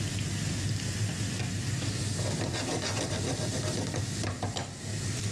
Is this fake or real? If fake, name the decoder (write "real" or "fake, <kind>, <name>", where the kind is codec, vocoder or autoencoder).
real